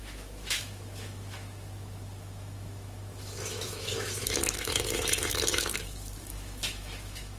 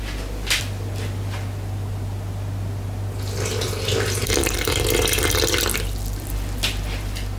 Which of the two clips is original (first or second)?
second